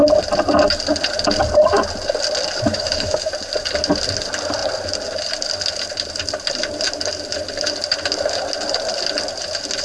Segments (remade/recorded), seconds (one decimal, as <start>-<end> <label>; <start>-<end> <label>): 0.0-2.7 recorded; 2.7-3.3 remade; 3.3-9.8 recorded